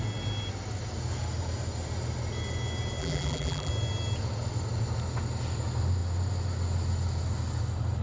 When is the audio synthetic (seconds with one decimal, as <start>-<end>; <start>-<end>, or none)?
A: 3.0-3.7